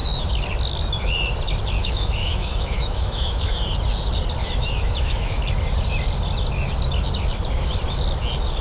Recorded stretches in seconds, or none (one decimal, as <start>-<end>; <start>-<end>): 0.0-1.8; 3.4-4.4; 5.4-8.6